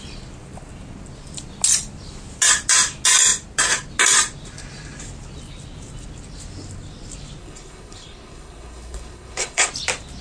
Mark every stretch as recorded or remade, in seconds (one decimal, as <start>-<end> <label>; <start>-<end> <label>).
0.0-7.4 recorded; 7.4-9.7 remade; 9.7-10.2 recorded